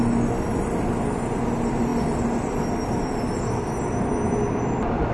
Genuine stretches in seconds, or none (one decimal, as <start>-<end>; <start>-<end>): 0.0-5.1